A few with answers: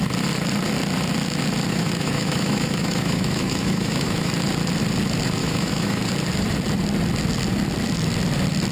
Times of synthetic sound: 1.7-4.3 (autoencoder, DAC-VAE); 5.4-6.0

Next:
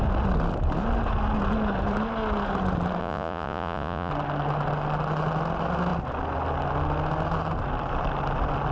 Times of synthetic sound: 3.0-4.1 (vocoder, Vocos)

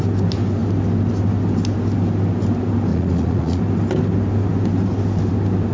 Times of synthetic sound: 2.9-3.6 (vocoder, Vocos)